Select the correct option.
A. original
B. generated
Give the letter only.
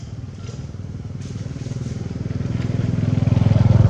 A